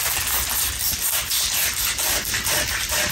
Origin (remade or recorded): recorded